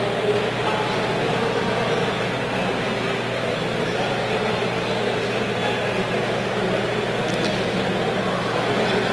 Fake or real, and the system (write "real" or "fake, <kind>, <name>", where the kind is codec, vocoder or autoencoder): real